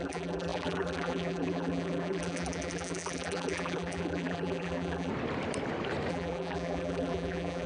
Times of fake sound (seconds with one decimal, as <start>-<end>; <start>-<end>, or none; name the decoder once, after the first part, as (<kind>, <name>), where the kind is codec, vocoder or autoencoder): 0.0-5.1 (vocoder, BigVGAN v2); 6.1-7.7